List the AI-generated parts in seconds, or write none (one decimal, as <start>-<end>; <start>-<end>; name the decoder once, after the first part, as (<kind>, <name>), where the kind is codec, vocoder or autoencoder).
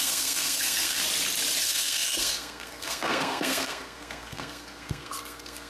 0.0-1.0 (codec, SNAC); 1.6-5.7